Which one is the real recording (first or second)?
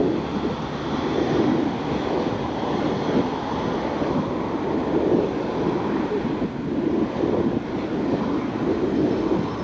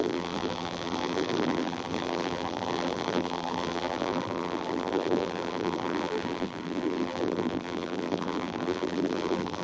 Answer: first